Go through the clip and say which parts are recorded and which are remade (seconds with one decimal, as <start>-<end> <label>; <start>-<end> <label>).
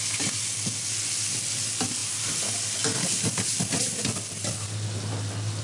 0.0-5.6 recorded